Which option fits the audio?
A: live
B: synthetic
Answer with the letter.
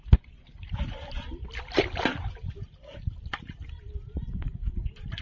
A